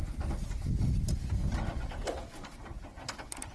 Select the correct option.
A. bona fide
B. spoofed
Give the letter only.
A